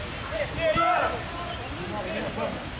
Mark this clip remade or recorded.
recorded